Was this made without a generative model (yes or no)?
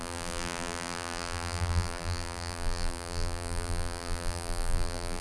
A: no